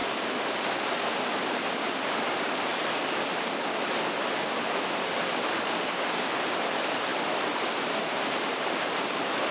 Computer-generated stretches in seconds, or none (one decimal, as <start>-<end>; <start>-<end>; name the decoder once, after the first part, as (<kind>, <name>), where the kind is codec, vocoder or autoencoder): 7.1-8.8 (vocoder, BigVGAN v2)